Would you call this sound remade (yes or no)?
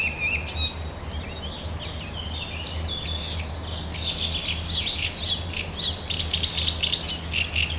no